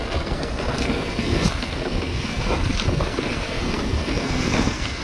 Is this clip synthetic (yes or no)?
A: yes